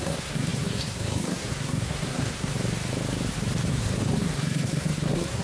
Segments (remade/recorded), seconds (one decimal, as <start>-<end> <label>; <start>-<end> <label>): 0.0-2.5 remade; 2.5-3.7 recorded; 3.7-5.4 remade